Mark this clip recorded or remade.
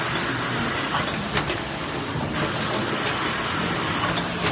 recorded